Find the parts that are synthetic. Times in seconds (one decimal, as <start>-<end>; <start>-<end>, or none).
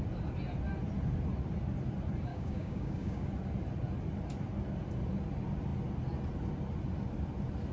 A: 2.3-3.3